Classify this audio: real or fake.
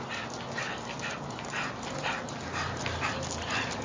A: real